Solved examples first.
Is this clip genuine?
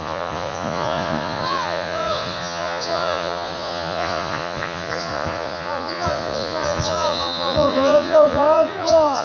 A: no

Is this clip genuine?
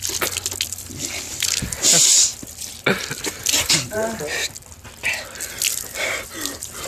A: yes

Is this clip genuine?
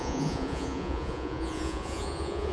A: no